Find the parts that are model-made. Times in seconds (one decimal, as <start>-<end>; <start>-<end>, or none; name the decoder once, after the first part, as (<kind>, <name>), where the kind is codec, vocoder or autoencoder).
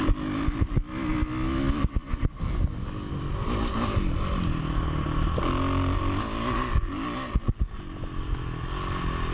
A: none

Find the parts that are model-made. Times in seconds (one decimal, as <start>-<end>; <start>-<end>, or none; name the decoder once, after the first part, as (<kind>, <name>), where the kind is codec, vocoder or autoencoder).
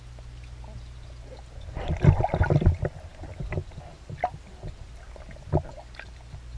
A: none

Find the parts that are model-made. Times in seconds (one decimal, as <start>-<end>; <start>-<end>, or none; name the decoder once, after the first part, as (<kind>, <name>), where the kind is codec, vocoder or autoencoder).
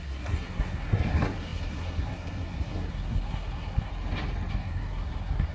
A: 0.0-3.9 (codec, SNAC); 4.5-5.5